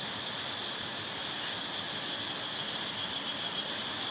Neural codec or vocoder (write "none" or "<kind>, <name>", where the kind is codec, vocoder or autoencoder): none